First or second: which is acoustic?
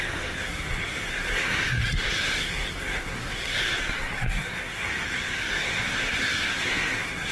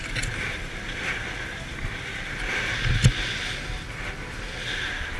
second